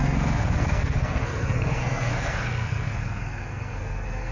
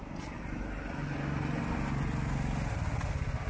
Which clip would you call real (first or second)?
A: second